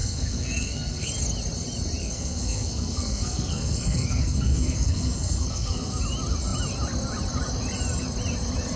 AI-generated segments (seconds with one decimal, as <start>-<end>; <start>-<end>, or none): 0.0-1.1; 2.0-6.0